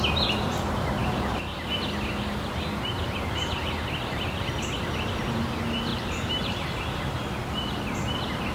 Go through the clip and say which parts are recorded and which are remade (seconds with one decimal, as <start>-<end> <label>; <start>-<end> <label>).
0.0-5.9 recorded; 5.9-6.6 remade; 6.6-8.5 recorded